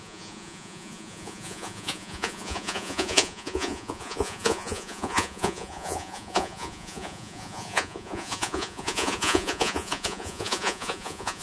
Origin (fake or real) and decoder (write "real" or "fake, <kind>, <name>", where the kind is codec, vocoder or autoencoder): fake, vocoder, Vocos